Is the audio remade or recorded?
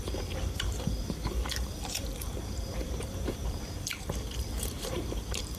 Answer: remade